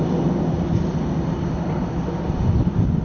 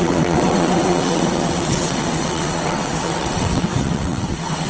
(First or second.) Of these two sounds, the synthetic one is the second